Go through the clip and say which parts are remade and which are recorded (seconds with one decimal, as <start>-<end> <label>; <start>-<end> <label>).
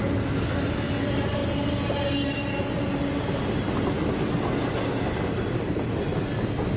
0.0-6.8 recorded